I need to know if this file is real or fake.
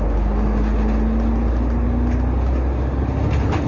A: real